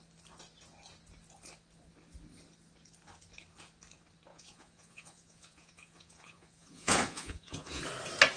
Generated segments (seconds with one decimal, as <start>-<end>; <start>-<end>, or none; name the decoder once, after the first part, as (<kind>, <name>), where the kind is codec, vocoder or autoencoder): 4.3-7.8 (vocoder, Vocos)